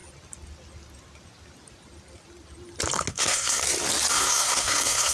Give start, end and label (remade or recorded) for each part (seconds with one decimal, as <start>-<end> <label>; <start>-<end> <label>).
0.0-3.1 recorded; 3.1-3.6 remade; 3.6-4.1 recorded; 4.1-5.1 remade